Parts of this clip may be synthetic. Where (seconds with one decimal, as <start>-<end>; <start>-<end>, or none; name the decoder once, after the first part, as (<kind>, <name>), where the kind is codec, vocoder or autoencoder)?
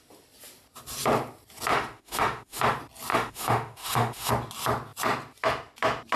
1.7-2.6 (autoencoder, DAC-VAE); 3.1-4.3